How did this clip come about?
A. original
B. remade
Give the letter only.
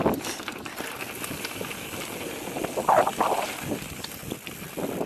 A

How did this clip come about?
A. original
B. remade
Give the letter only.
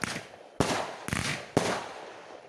A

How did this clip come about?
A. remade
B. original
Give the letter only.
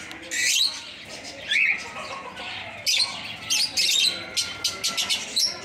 B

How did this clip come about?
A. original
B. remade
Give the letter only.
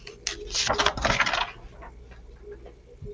A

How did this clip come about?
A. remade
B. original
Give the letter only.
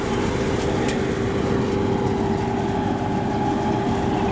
B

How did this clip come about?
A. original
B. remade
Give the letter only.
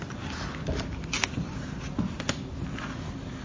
A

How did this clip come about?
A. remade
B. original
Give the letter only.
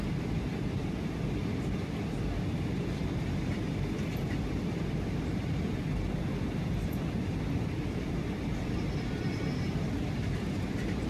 A